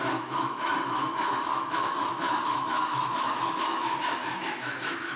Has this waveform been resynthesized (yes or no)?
yes